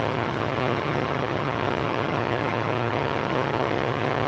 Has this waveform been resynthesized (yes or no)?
yes